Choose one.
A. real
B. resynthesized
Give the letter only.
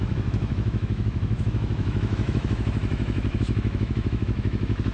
B